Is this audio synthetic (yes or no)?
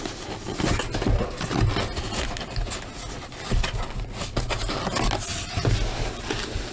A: no